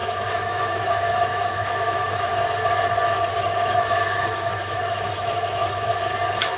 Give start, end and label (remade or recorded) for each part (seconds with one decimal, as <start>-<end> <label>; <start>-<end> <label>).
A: 0.0-2.3 remade; 2.3-3.3 recorded; 3.3-5.9 remade; 5.9-6.6 recorded